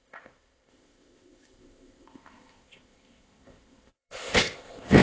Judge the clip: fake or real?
fake